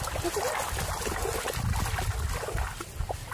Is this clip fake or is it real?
real